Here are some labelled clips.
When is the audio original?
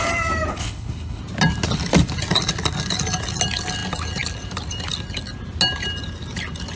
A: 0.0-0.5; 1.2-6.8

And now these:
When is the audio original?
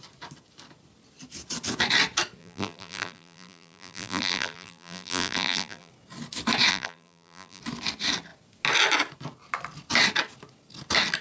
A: 0.0-2.4; 5.9-6.7; 7.6-11.2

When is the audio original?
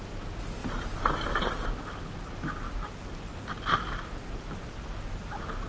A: 0.0-5.7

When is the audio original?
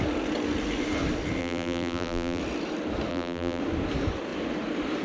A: 0.0-1.4; 2.4-3.1; 3.6-5.0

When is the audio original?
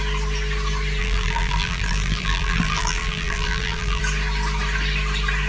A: 0.0-1.0; 4.0-5.5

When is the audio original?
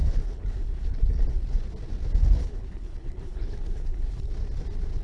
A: 1.2-2.4; 4.3-5.0